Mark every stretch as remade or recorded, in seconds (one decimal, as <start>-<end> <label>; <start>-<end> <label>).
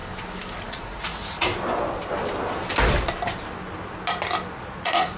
0.0-0.7 recorded; 0.7-1.5 remade; 1.5-4.6 recorded; 4.6-5.2 remade